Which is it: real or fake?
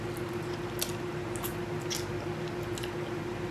real